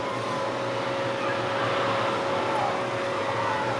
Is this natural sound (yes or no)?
yes